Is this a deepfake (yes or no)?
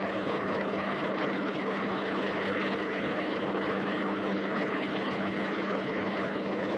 yes